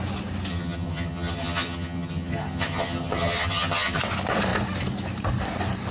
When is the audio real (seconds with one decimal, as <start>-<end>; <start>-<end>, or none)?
0.0-0.5; 4.0-5.9